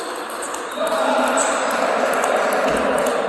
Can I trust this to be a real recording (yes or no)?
yes